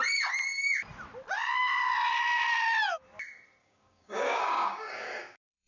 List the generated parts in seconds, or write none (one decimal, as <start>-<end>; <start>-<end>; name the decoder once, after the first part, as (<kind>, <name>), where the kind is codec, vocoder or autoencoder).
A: 3.6-5.7 (codec, DAC)